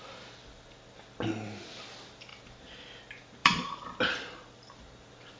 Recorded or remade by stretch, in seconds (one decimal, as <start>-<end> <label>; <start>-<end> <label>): 0.0-2.3 recorded; 2.3-3.0 remade; 3.0-3.4 recorded; 3.4-4.8 remade; 4.8-5.4 recorded